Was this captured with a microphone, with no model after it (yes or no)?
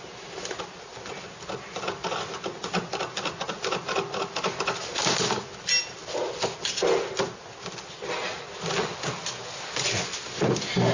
yes